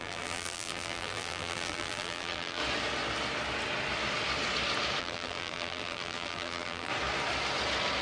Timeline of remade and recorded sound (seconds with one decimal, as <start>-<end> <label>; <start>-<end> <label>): 0.0-2.6 remade; 2.6-5.0 recorded; 5.0-6.9 remade; 6.9-8.0 recorded